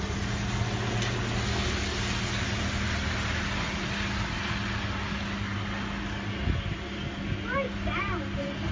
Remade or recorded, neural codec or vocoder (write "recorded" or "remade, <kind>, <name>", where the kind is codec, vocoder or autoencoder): recorded